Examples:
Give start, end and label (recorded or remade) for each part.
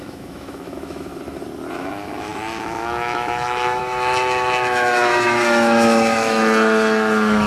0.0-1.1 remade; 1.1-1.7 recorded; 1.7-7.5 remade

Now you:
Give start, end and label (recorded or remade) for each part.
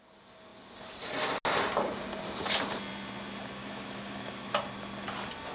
0.0-3.6 recorded; 3.6-4.6 remade; 4.6-5.5 recorded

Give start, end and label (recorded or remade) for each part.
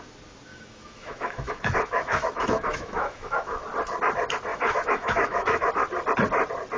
0.0-0.5 recorded; 0.5-3.6 remade; 3.6-4.5 recorded; 4.5-5.7 remade; 5.7-6.8 recorded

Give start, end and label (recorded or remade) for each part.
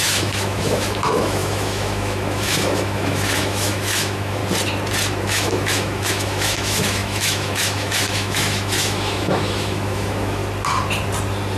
0.0-4.4 remade; 4.4-5.2 recorded; 5.2-10.4 remade; 10.4-11.6 recorded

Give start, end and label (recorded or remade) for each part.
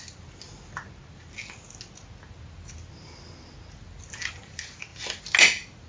0.0-5.9 recorded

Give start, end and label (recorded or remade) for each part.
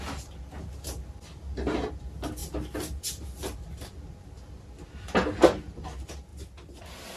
0.0-7.2 recorded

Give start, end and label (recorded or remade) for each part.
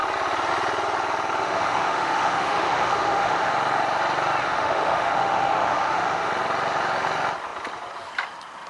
0.0-1.4 recorded; 1.4-3.5 remade; 3.5-4.4 recorded; 4.4-6.3 remade; 6.3-8.7 recorded